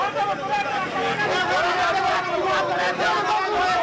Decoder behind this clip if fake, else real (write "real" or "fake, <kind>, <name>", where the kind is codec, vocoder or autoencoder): real